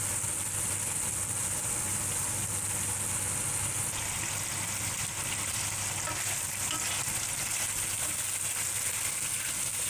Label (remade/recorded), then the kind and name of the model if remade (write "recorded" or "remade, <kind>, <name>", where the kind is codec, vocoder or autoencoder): recorded